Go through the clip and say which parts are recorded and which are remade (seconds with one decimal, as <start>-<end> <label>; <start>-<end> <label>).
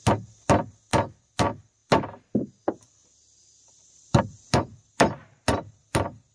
0.0-3.0 recorded; 3.0-4.2 remade; 4.2-5.2 recorded; 5.2-6.3 remade